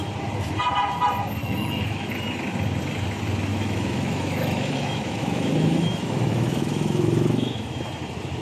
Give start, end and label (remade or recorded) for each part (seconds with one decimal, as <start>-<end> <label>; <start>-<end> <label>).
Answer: 0.0-1.4 recorded; 1.4-2.1 remade; 2.1-3.5 recorded; 3.5-7.8 remade; 7.8-8.4 recorded